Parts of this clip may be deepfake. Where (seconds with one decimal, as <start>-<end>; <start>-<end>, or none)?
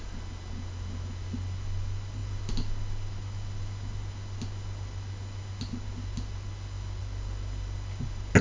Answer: none